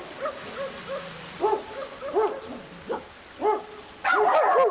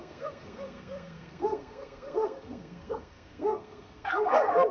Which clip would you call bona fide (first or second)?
first